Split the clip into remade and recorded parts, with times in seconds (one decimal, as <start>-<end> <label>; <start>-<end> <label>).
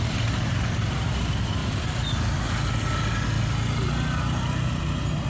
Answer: 0.0-5.3 recorded